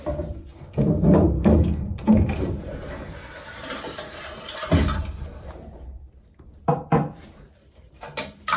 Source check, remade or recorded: remade